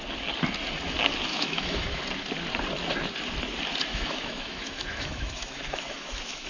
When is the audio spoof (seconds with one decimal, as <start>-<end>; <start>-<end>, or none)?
1.3-2.0; 3.9-6.5